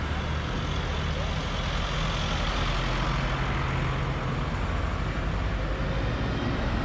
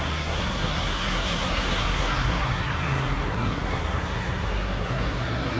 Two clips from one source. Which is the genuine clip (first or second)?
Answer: first